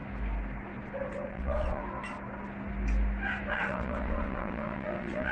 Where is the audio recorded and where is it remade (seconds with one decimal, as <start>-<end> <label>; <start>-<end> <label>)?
0.0-1.3 recorded; 1.3-1.8 remade; 1.8-3.5 recorded; 3.5-5.3 remade